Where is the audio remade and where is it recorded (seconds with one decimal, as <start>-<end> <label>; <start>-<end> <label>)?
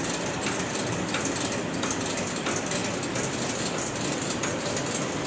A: 0.0-5.3 recorded